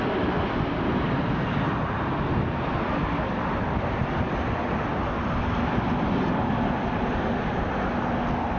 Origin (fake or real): real